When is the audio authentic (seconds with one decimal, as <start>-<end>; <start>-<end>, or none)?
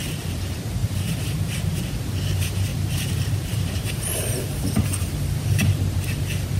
0.0-0.8; 1.8-2.7; 4.8-6.6